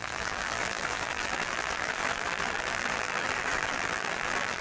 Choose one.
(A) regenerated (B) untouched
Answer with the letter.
A